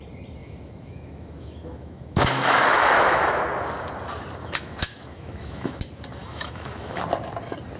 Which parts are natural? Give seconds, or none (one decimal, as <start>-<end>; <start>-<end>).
0.0-0.4; 3.4-4.4; 5.8-6.2; 7.0-7.8